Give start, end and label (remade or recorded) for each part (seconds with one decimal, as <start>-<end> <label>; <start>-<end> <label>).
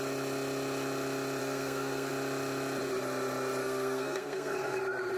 0.0-1.4 recorded; 1.4-2.1 remade; 2.1-3.6 recorded; 3.6-4.8 remade; 4.8-5.2 recorded